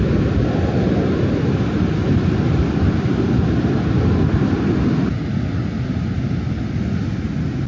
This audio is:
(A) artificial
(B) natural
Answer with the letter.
B